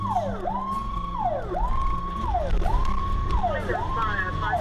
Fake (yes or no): no